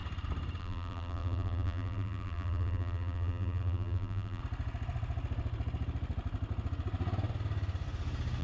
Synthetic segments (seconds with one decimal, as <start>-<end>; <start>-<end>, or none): 0.6-4.4

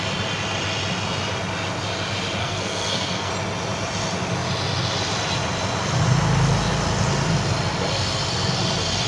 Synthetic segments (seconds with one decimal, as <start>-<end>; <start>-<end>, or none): 2.4-3.3

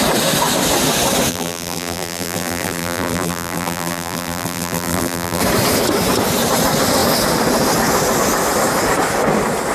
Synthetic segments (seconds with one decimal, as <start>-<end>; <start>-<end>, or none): 1.3-5.4

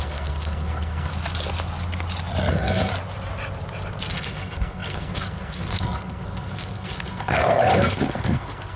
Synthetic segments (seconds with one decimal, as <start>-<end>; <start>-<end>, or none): 0.0-1.1; 2.5-2.9; 4.1-8.8

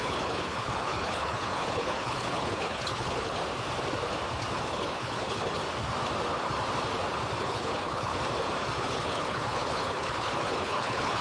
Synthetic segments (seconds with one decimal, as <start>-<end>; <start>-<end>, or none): 0.0-3.4; 4.6-5.6; 7.4-8.1; 8.8-11.2

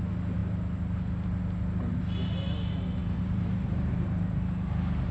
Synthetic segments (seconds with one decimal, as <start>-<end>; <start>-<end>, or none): 3.0-5.1

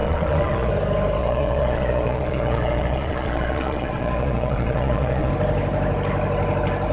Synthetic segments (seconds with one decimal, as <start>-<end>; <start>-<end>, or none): 0.0-0.7; 1.2-5.3

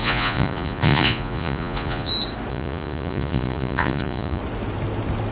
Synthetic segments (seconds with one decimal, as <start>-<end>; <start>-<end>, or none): 0.0-2.1; 2.5-4.4